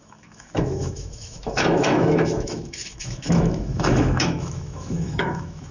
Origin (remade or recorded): remade